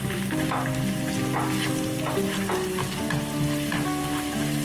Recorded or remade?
recorded